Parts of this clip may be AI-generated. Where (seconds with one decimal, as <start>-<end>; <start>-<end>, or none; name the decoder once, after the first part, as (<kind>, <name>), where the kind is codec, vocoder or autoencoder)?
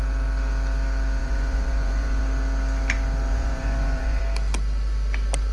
1.2-2.2 (vocoder, Vocos); 3.3-4.2